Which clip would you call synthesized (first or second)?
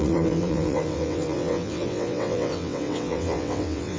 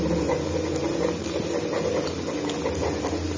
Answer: first